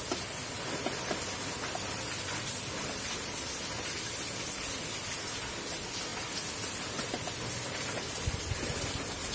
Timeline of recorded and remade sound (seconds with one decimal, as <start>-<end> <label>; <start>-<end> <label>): 0.0-9.3 recorded